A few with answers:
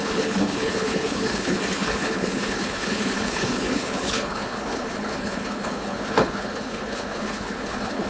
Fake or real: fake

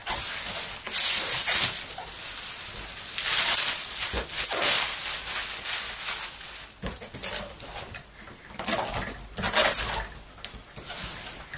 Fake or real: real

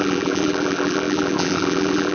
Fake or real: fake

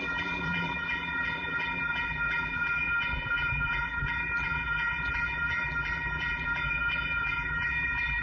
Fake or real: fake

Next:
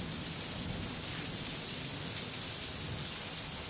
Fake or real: real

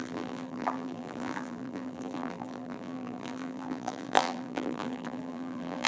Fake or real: fake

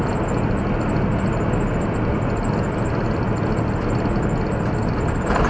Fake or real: real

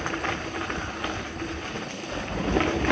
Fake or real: real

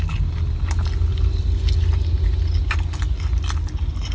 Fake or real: real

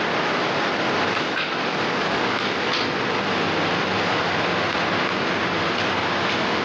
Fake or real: real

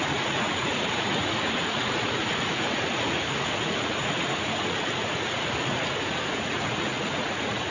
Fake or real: fake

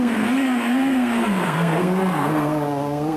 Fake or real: fake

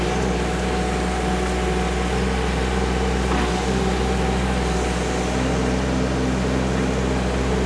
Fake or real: real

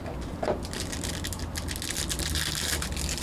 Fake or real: real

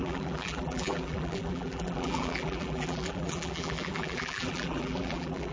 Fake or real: fake